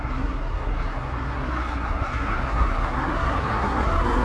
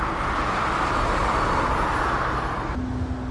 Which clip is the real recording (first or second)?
second